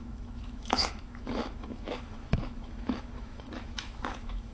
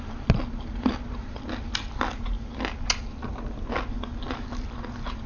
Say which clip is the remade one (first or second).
first